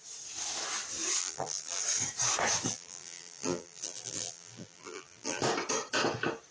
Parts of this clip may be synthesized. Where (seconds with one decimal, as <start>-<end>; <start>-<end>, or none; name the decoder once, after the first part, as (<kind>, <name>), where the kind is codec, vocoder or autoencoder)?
1.2-1.8 (vocoder, BigVGAN v2); 2.7-5.4